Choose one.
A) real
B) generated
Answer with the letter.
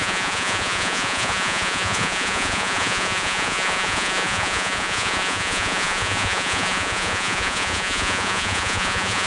B